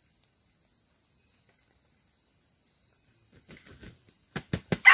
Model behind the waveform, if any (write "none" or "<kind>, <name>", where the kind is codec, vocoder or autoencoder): none